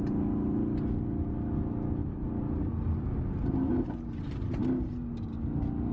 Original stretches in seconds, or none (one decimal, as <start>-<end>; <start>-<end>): 0.0-5.9